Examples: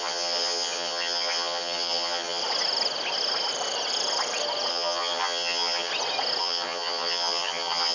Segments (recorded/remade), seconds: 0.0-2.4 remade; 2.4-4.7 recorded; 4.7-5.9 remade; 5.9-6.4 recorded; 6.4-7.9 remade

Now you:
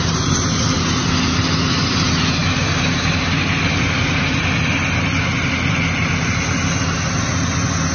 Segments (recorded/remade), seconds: 0.0-7.9 recorded

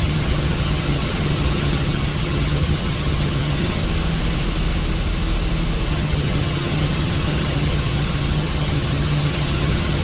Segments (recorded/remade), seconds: 0.0-3.8 remade; 3.8-5.9 recorded; 5.9-10.0 remade

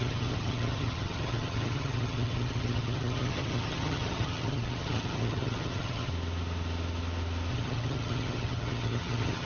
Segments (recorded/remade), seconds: 0.0-6.1 remade; 6.1-7.5 recorded; 7.5-9.5 remade

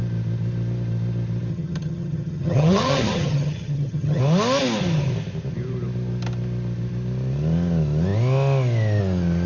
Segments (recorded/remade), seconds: 0.0-1.5 recorded; 1.5-4.2 remade; 4.2-9.5 recorded

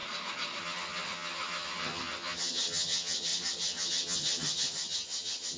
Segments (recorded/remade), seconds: 0.0-0.6 recorded; 0.6-5.6 remade

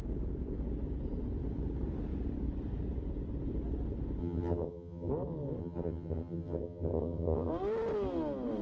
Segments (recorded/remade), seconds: 0.0-4.2 recorded; 4.2-5.1 remade; 5.1-5.6 recorded; 5.6-7.5 remade; 7.5-8.6 recorded